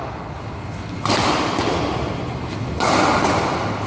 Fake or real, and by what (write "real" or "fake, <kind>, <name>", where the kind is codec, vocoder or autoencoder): real